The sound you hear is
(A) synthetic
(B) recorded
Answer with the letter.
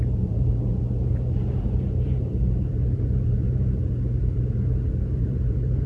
A